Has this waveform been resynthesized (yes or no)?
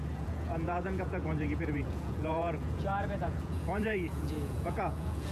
yes